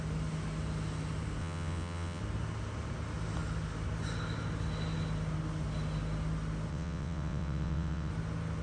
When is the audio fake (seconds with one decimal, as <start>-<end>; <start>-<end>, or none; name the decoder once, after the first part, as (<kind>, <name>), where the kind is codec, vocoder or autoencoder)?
1.4-2.2 (vocoder, WaveNeXt); 6.7-8.1